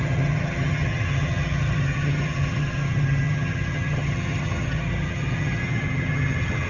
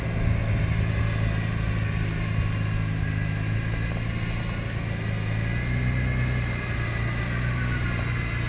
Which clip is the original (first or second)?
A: second